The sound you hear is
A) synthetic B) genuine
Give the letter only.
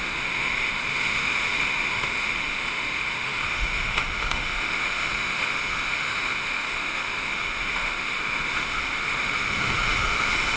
A